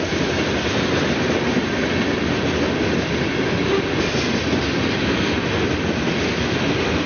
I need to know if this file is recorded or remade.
recorded